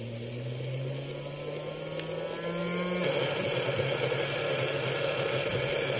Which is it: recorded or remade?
recorded